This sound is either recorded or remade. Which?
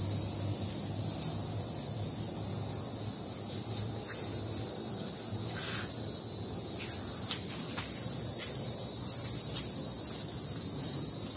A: recorded